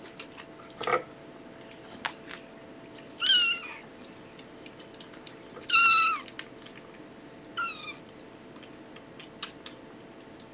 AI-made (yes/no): no